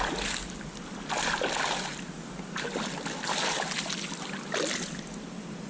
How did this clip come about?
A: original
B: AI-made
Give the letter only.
A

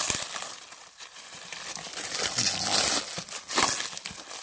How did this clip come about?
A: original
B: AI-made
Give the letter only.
A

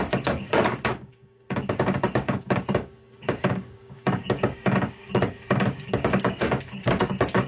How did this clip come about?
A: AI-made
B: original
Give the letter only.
A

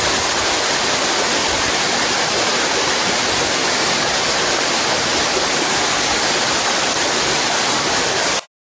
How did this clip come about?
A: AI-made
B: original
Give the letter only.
B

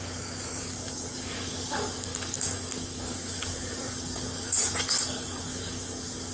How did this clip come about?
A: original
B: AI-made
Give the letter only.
B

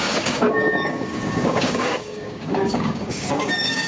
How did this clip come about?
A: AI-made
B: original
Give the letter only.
A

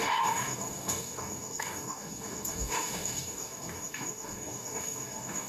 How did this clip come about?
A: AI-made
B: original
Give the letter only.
A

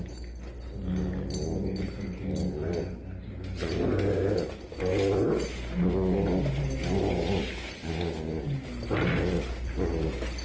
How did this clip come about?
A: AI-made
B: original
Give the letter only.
B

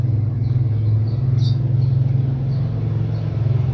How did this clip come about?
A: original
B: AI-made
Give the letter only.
A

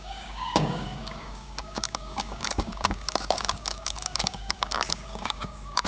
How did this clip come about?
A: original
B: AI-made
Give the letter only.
B